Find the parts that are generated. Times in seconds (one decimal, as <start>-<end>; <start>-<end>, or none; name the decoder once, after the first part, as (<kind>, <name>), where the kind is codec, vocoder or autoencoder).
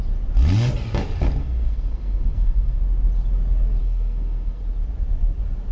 1.4-2.8 (codec, SNAC); 3.8-4.6